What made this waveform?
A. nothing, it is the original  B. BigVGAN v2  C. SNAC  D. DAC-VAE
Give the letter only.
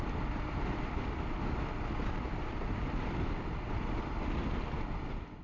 A